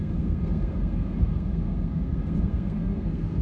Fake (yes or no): yes